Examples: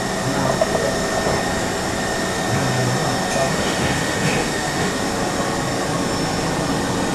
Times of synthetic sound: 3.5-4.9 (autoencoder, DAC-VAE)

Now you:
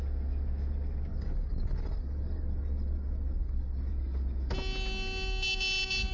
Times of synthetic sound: 1.1-3.9 (codec, DAC)